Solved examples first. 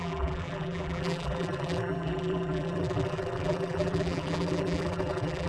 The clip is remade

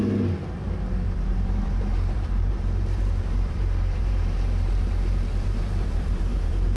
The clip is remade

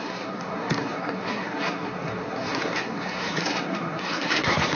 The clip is remade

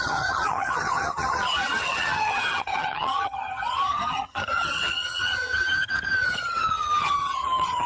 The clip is remade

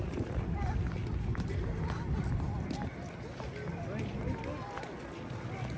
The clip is recorded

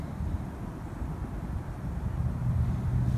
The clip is recorded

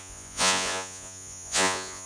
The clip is remade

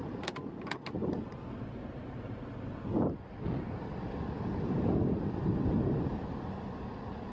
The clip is recorded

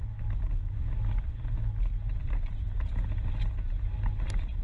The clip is recorded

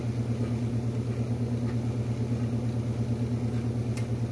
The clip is recorded